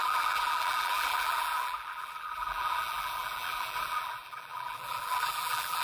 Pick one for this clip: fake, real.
fake